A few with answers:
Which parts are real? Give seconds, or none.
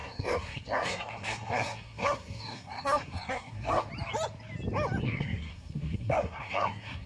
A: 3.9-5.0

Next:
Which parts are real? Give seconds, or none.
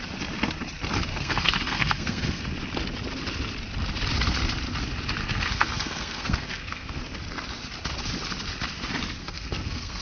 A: 0.0-1.1; 2.4-5.2; 7.0-9.2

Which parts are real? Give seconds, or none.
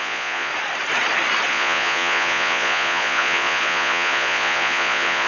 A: 0.5-1.5